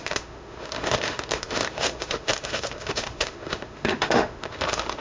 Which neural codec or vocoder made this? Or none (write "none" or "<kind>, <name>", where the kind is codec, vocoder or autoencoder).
autoencoder, DAC-VAE